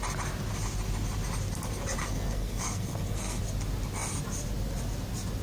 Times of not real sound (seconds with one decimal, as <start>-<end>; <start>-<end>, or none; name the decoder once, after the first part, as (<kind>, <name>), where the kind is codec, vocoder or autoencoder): 2.0-3.4 (codec, SNAC)